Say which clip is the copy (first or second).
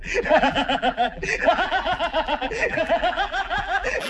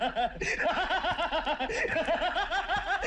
first